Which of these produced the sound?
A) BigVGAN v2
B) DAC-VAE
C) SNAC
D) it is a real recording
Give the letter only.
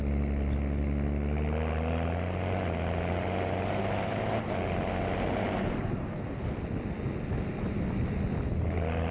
D